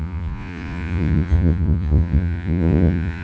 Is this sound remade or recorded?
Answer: remade